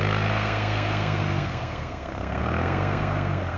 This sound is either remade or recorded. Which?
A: remade